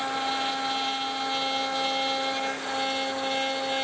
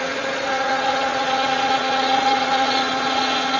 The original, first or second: first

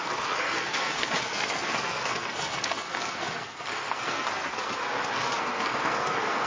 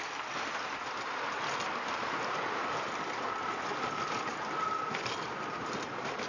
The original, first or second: second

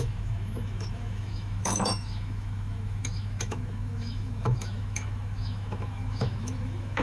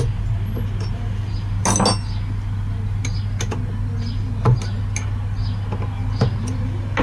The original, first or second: second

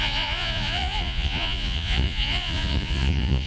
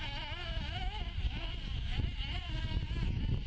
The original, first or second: second